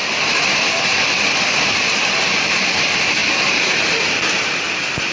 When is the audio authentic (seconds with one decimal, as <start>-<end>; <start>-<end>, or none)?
0.0-5.1